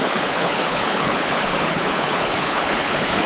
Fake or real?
fake